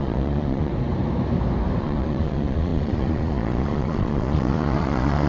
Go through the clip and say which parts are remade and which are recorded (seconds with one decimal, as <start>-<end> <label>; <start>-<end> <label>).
0.0-0.7 remade; 0.7-1.8 recorded; 1.8-5.3 remade